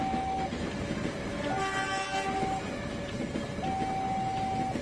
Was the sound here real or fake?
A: real